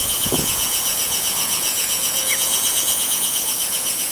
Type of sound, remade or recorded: remade